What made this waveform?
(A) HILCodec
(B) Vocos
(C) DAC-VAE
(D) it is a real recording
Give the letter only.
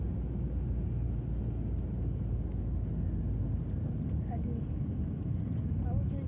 D